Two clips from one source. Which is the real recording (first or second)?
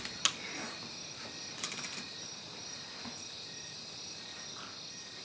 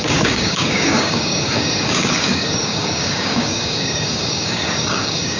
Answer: first